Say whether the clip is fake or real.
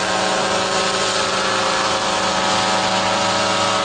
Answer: real